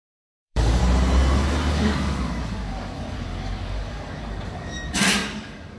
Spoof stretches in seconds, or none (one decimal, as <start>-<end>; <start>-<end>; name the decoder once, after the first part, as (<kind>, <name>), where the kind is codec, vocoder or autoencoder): 0.0-0.8 (codec, DAC); 1.7-5.8